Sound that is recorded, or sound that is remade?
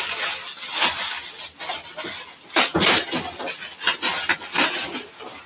recorded